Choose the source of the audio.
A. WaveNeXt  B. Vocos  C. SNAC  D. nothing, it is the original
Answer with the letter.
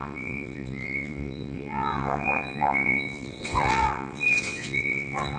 A